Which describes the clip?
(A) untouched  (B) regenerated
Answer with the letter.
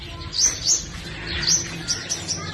A